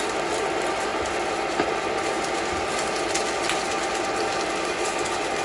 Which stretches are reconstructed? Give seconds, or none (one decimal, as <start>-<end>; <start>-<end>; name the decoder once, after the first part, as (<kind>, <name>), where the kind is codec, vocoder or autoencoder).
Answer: none